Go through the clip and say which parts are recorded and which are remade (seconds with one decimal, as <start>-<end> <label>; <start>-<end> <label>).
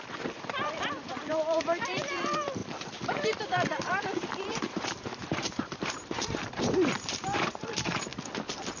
0.0-8.1 remade; 8.1-8.8 recorded